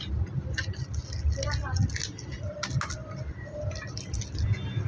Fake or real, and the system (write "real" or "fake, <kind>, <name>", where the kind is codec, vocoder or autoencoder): real